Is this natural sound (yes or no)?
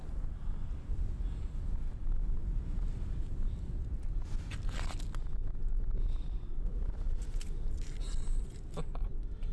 yes